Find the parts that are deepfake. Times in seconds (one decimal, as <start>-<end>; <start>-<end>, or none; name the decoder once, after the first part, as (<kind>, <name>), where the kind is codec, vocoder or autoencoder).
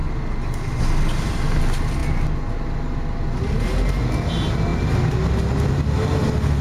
none